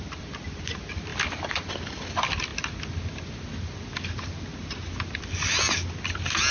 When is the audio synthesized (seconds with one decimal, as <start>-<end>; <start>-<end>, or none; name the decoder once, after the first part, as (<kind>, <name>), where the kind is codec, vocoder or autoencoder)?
none